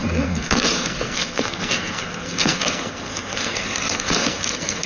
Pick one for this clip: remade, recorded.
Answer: remade